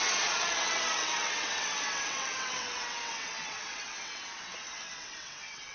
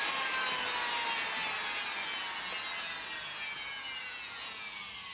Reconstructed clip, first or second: first